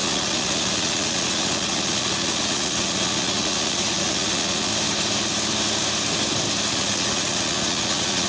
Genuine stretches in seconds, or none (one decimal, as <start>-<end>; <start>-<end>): 4.7-6.7